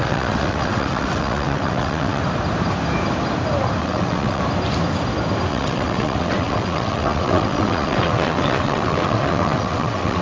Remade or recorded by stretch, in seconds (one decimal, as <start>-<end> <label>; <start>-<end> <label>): 0.0-2.2 remade; 2.2-3.8 recorded; 3.8-4.4 remade; 4.4-5.5 recorded; 5.5-10.2 remade